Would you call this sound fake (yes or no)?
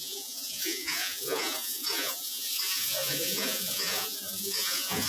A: yes